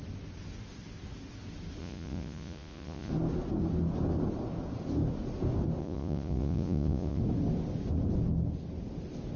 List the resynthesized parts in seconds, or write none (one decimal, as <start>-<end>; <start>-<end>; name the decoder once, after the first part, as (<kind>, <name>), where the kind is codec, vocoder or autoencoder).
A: 1.8-3.1 (vocoder, Vocos); 5.8-7.2